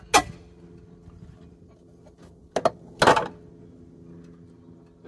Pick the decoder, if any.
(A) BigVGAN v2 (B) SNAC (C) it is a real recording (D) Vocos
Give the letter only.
C